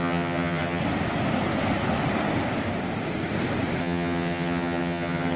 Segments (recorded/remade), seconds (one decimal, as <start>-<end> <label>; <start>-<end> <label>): 0.0-0.8 remade; 0.8-3.8 recorded; 3.8-5.4 remade